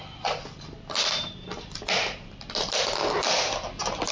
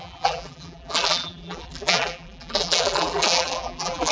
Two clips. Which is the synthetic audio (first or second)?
second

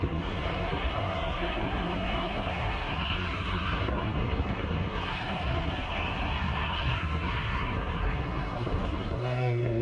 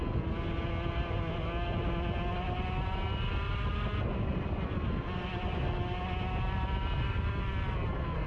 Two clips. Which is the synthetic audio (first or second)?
first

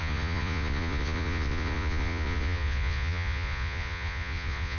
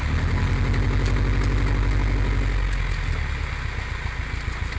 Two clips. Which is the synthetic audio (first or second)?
first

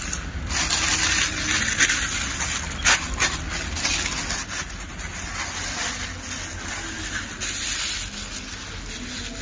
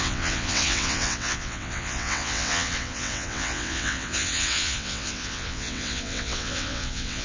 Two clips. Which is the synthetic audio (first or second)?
second